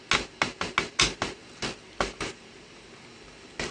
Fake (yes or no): no